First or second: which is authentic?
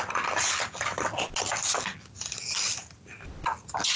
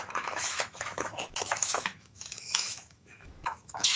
first